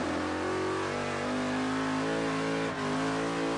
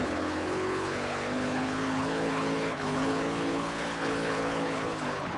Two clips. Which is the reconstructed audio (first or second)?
second